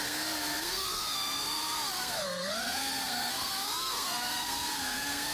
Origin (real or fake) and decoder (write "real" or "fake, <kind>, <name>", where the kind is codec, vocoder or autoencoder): fake, codec, SNAC